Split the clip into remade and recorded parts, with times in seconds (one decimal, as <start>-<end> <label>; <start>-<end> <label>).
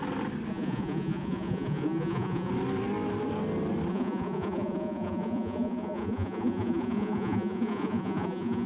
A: 0.0-0.5 recorded; 0.5-2.5 remade; 2.5-3.9 recorded; 3.9-8.7 remade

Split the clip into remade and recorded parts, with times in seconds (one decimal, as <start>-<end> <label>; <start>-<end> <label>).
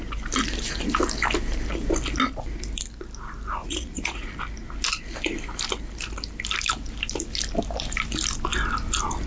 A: 0.0-3.6 recorded; 3.6-4.3 remade; 4.3-9.3 recorded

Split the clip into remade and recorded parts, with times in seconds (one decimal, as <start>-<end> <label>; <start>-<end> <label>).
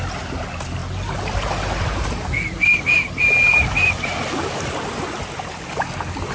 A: 0.0-6.3 recorded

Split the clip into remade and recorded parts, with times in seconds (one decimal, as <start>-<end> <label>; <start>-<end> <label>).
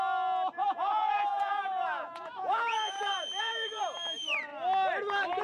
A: 0.0-0.6 recorded; 0.6-3.8 remade; 3.8-5.4 recorded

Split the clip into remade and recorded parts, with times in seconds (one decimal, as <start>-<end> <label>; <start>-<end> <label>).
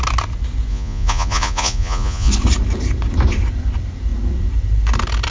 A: 0.0-0.7 recorded; 0.7-2.3 remade; 2.3-5.3 recorded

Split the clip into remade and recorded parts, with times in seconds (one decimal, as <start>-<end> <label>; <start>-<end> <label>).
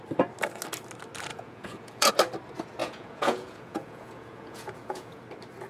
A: 0.0-1.3 recorded; 1.3-2.1 remade; 2.1-2.8 recorded; 2.8-5.2 remade; 5.2-5.7 recorded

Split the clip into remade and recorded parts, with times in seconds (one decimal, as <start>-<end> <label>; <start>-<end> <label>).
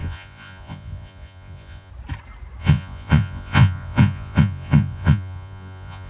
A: 0.0-1.9 remade; 1.9-2.6 recorded; 2.6-6.1 remade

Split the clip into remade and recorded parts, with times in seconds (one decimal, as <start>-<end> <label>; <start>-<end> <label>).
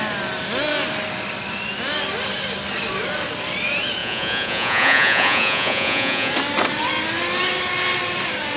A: 0.0-4.0 recorded; 4.0-6.3 remade; 6.3-8.6 recorded